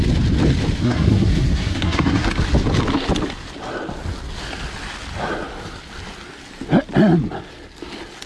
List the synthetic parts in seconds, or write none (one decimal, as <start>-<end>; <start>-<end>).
0.8-2.3